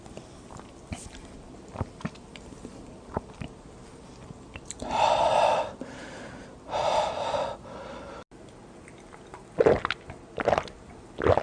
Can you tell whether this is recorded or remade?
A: recorded